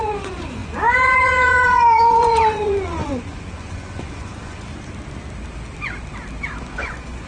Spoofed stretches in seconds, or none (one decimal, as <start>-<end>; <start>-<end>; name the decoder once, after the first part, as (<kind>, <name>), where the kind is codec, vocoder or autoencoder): 0.0-4.7 (vocoder, Vocos); 6.6-7.3